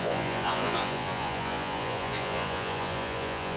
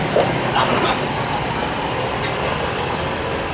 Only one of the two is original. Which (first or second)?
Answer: second